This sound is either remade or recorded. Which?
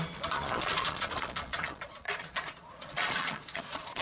remade